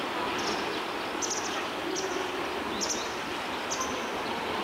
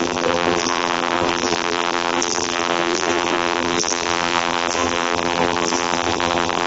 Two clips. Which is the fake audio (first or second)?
second